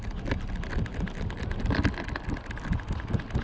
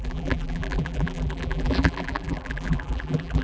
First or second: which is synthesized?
second